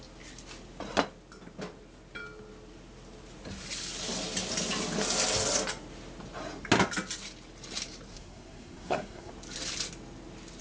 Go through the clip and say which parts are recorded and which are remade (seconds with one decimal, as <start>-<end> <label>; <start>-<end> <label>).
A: 0.0-8.1 recorded; 8.1-9.3 remade; 9.3-10.6 recorded